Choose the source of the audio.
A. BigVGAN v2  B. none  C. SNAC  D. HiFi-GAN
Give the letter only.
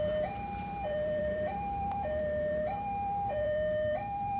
A